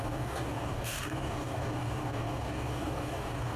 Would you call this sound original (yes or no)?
no